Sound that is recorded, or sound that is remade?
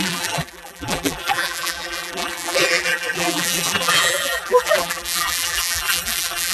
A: remade